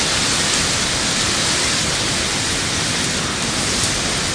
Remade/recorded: recorded